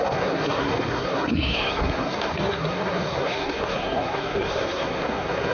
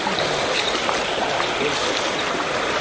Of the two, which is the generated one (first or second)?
first